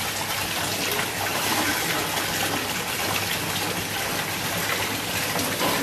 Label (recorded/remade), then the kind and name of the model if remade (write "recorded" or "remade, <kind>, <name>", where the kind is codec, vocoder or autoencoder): recorded